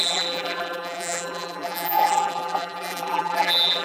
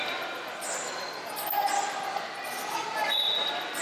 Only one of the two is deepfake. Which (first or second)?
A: first